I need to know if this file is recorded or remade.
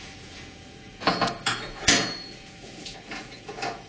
remade